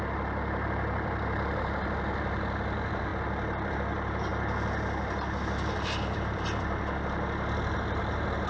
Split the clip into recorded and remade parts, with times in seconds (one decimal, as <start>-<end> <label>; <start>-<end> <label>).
0.0-3.1 remade; 3.1-3.7 recorded; 3.7-4.3 remade; 4.3-5.0 recorded; 5.0-8.5 remade